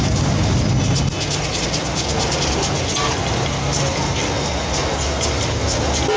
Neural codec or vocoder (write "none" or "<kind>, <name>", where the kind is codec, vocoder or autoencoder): none